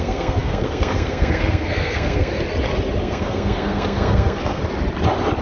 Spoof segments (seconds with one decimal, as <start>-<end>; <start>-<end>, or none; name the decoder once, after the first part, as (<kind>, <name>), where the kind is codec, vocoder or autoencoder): 0.0-2.3 (codec, SNAC); 3.0-4.6